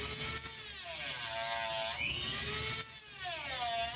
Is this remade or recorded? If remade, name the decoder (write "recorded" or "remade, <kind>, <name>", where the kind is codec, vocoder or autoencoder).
recorded